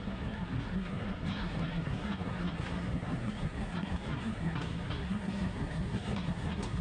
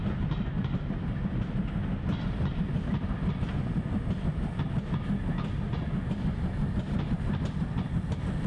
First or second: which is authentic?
second